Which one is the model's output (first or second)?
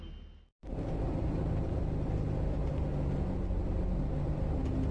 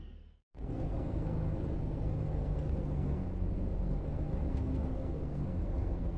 second